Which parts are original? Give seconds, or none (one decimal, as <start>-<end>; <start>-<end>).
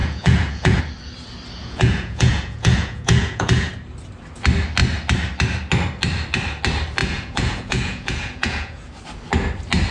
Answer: 0.8-1.6; 3.7-7.0; 8.9-9.9